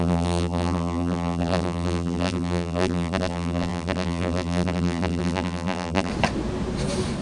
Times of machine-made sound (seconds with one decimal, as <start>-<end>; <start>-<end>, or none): 0.0-6.1